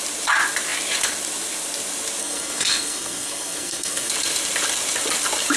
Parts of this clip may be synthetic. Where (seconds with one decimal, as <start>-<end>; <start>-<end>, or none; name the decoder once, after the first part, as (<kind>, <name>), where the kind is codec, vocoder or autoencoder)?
2.2-4.1 (codec, SNAC)